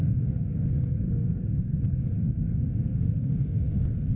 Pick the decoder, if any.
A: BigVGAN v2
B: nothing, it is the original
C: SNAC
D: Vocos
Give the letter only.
C